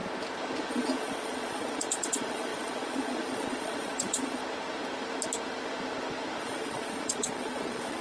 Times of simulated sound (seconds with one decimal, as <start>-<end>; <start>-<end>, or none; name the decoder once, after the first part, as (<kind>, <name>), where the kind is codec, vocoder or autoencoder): 0.7-4.4 (vocoder, Vocos); 6.4-8.0